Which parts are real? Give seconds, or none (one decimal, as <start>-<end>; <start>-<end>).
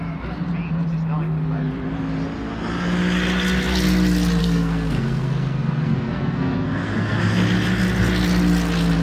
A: 0.0-4.4; 7.2-9.0